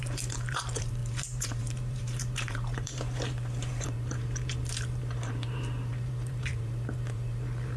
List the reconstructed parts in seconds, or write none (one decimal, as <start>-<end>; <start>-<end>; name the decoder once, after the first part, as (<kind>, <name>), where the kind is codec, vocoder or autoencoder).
0.0-7.8 (vocoder, BigVGAN v2)